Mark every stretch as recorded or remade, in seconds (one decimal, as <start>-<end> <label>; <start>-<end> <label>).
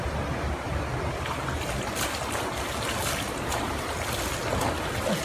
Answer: 0.0-5.2 recorded